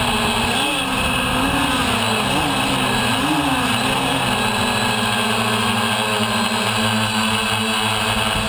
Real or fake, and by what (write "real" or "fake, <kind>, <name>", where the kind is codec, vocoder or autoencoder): real